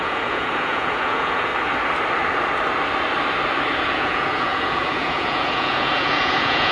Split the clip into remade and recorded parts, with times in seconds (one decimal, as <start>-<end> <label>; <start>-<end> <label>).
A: 0.0-1.5 remade; 1.5-3.8 recorded; 3.8-6.7 remade